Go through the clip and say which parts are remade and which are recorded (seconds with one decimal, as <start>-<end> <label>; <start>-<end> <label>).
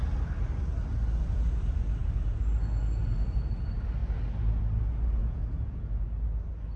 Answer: 0.0-5.2 recorded; 5.2-6.0 remade; 6.0-6.8 recorded